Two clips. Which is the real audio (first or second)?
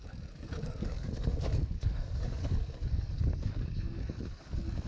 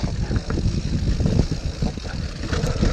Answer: second